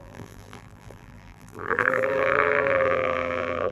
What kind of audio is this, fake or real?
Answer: fake